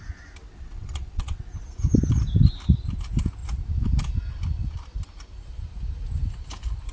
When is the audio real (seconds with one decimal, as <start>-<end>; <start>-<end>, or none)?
0.0-0.4; 1.5-6.9